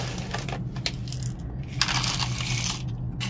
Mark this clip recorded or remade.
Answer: recorded